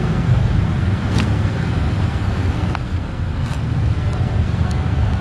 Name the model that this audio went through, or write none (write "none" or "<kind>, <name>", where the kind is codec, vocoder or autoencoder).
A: codec, SNAC